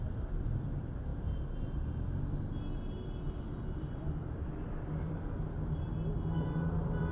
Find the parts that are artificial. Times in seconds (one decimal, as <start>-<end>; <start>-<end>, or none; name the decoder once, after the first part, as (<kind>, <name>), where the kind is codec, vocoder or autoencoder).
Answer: 0.0-1.1 (vocoder, BigVGAN v2); 3.3-7.1